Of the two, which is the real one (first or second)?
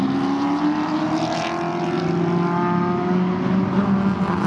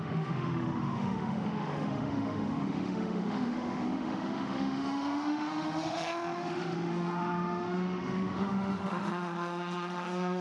first